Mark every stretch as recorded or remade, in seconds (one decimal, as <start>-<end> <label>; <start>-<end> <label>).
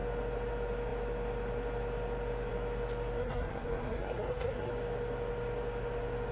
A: 0.0-3.2 recorded; 3.2-4.7 remade; 4.7-6.3 recorded